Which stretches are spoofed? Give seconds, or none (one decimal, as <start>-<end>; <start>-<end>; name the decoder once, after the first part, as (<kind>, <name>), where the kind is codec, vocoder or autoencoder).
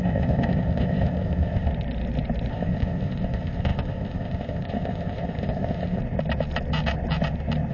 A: 0.0-1.7 (codec, ZipCodec); 2.5-6.0